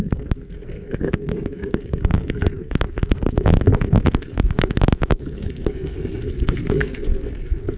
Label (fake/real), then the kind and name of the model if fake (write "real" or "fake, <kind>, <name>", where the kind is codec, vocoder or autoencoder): fake, codec, SNAC